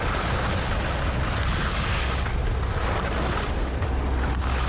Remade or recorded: recorded